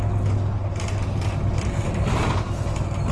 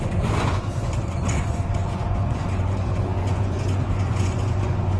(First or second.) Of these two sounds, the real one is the first